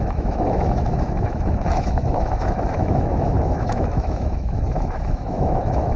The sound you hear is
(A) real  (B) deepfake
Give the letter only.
B